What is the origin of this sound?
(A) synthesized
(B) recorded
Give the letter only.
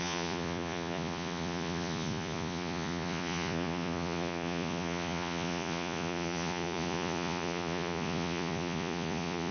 A